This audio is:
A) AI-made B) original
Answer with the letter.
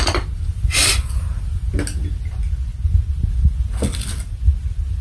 B